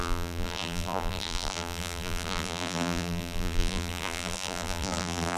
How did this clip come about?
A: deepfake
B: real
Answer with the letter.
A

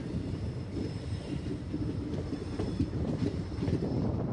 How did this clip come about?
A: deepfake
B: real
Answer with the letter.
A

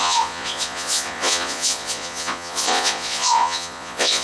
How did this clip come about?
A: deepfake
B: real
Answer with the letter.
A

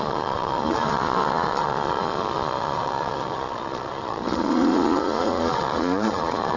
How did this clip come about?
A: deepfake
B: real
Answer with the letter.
A